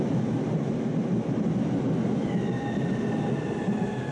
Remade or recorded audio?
recorded